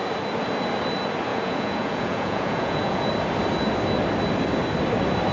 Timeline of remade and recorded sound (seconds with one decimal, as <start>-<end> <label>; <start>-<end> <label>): 0.0-1.3 recorded; 1.3-3.1 remade; 3.1-5.3 recorded